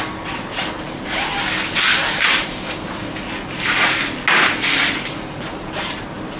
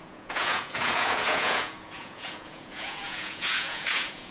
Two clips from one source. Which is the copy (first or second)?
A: second